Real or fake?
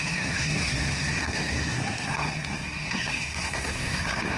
fake